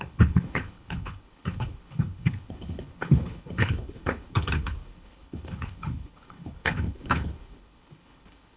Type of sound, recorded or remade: remade